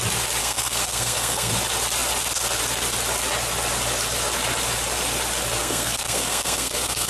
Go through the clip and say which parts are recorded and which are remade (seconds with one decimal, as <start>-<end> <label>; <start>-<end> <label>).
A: 0.0-0.4 recorded; 0.4-1.5 remade; 1.5-5.6 recorded; 5.6-7.1 remade